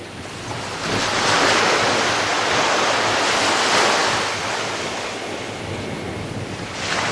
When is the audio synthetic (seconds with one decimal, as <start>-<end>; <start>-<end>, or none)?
none